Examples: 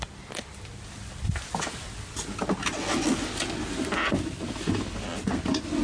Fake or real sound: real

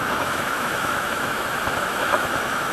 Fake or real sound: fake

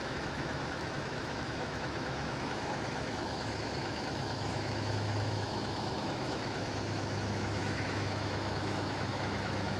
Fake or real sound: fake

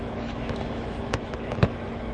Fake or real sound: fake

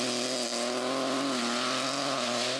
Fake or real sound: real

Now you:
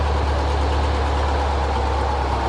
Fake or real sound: real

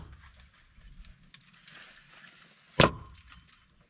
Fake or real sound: real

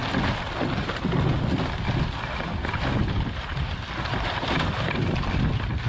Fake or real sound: real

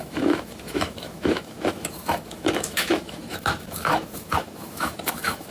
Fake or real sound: fake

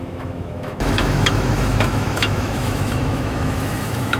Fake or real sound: fake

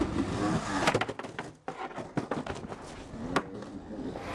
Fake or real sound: real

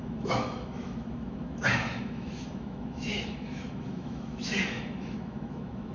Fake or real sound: fake